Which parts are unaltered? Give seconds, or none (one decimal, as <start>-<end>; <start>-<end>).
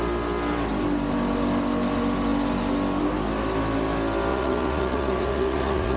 0.0-4.3